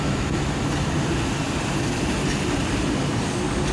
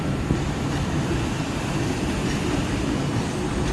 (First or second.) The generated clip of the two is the second